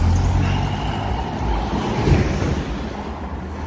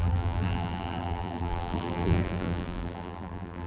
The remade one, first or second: second